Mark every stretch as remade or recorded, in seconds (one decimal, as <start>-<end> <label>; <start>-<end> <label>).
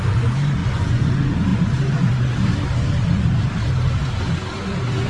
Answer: 0.0-0.6 recorded; 0.6-1.1 remade; 1.1-5.1 recorded